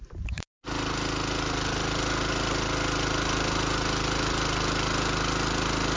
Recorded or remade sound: recorded